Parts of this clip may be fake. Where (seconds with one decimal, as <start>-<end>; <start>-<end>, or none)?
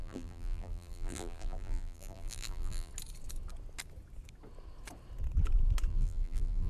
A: 0.0-2.9; 5.9-6.7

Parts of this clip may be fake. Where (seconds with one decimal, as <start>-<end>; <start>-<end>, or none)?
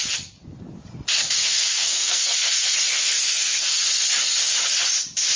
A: 1.4-3.9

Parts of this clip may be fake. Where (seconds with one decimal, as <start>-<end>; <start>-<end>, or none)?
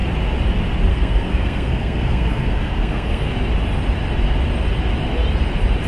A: 0.9-3.3